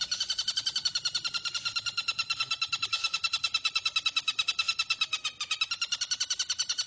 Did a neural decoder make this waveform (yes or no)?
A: no